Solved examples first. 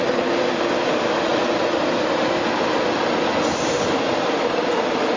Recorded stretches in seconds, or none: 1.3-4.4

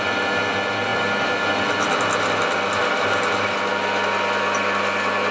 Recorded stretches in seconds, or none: 0.0-0.9; 1.5-5.3

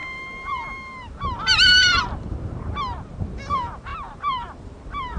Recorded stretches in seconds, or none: none

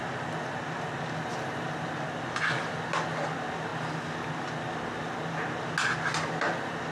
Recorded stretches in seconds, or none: 0.0-6.9